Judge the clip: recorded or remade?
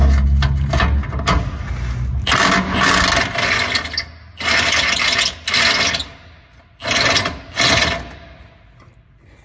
recorded